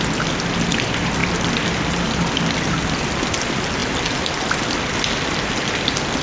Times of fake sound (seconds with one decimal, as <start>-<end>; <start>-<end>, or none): none